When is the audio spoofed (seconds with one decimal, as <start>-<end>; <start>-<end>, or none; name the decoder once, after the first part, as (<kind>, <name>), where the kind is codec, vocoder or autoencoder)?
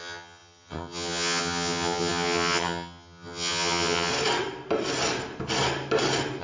0.0-4.1 (vocoder, HiFi-GAN)